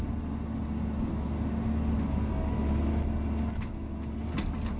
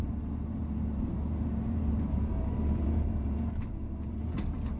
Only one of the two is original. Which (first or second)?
first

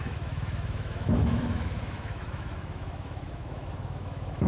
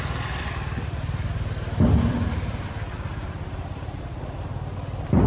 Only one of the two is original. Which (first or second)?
second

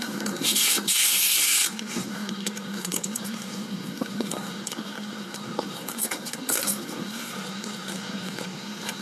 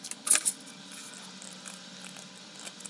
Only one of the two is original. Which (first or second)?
second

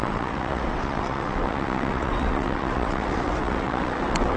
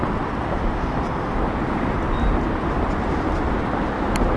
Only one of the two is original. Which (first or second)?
second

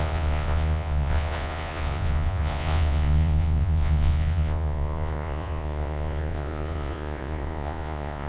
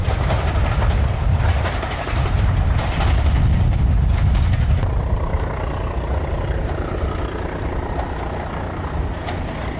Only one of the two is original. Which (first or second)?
second